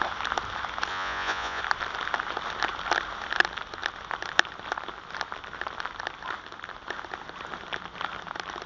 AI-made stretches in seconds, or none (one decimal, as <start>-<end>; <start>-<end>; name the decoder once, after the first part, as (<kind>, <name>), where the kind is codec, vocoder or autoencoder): 0.9-1.6 (vocoder, Vocos)